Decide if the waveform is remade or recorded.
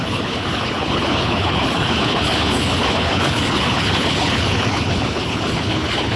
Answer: remade